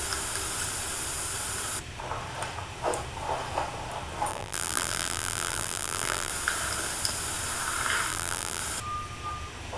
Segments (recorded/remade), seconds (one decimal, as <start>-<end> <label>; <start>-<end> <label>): 0.0-4.3 recorded; 4.3-6.3 remade; 6.3-8.1 recorded; 8.1-8.6 remade; 8.6-9.8 recorded